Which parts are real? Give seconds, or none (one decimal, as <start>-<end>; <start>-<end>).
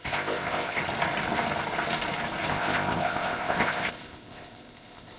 0.8-2.5